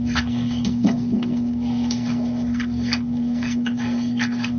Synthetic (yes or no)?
yes